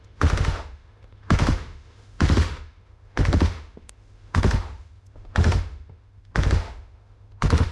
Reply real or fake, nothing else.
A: fake